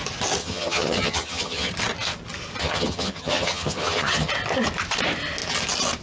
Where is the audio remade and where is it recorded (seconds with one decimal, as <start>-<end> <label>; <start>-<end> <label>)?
0.0-0.4 recorded; 0.4-1.7 remade; 1.7-2.6 recorded; 2.6-4.3 remade; 4.3-6.0 recorded